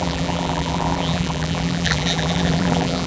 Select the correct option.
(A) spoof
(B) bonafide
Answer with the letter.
A